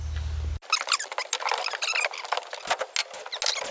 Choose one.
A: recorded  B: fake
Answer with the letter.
A